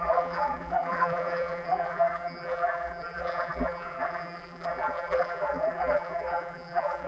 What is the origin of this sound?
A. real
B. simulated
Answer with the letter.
B